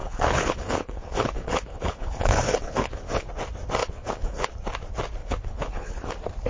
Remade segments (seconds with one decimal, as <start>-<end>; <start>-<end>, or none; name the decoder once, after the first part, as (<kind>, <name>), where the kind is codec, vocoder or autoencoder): 0.0-3.3 (codec, HILCodec); 3.8-4.5; 5.2-6.1